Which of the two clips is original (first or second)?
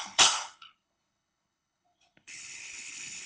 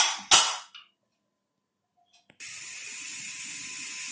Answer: second